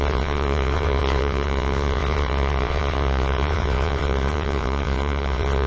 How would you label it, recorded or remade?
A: remade